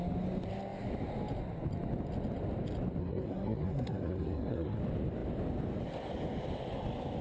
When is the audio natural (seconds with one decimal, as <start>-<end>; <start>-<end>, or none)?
0.0-3.0; 4.8-7.2